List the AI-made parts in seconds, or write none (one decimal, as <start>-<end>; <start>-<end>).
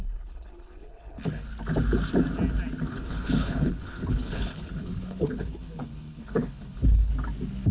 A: 0.0-1.5; 2.9-7.1